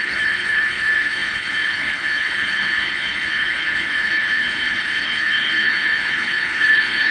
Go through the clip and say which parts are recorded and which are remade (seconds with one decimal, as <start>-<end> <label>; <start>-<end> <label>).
0.0-7.1 remade